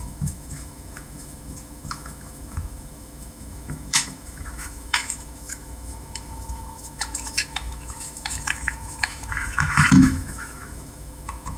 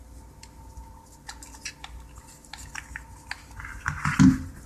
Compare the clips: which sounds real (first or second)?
second